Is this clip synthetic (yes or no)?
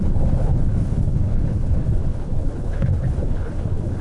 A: yes